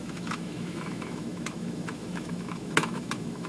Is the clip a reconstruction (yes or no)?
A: yes